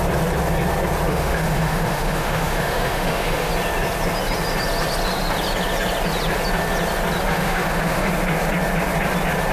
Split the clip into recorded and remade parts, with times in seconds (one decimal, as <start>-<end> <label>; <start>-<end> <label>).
0.0-1.1 recorded; 1.1-3.5 remade; 3.5-7.3 recorded; 7.3-8.1 remade; 8.1-9.5 recorded